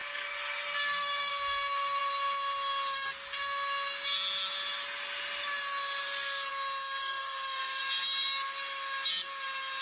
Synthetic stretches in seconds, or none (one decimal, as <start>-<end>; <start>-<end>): 0.0-1.3; 6.0-6.5; 7.0-7.8